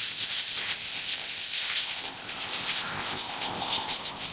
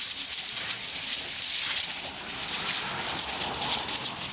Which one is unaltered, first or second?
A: second